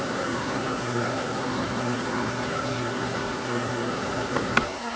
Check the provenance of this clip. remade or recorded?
remade